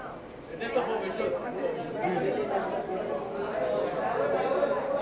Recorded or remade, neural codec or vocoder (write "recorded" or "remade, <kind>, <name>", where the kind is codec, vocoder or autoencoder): recorded